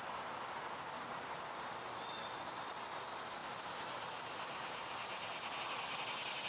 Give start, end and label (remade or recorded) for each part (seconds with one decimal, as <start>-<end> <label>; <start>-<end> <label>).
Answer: 0.0-6.5 recorded